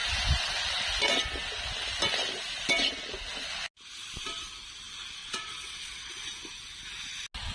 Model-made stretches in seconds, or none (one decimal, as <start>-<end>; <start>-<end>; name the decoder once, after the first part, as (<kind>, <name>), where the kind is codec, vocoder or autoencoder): 5.2-6.1 (vocoder, WaveNeXt)